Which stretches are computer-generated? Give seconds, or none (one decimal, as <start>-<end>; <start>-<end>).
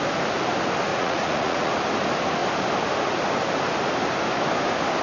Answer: 0.9-1.7